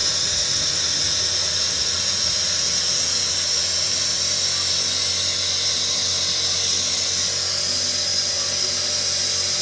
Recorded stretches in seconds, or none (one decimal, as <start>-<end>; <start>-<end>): 4.2-9.6